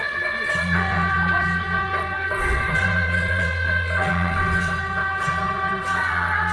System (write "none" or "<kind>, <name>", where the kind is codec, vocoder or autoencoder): vocoder, WaveNeXt